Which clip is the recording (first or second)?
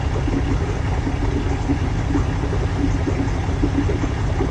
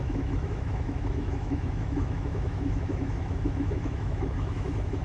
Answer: first